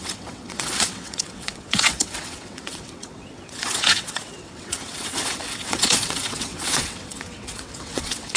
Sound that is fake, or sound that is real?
fake